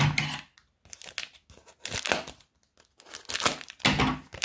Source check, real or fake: real